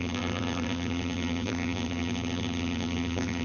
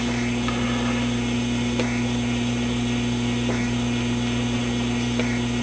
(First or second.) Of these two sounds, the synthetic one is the first